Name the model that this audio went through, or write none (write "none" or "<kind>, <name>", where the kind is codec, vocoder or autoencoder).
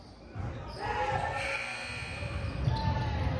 none